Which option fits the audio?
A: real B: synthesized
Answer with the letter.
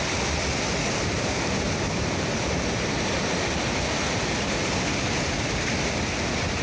A